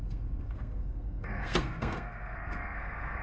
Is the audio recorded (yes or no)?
no